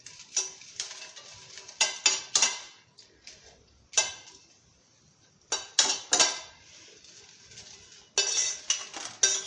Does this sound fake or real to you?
real